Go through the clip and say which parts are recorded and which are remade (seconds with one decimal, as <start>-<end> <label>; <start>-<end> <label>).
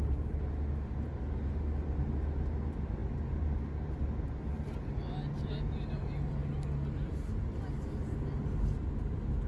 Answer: 0.0-9.5 recorded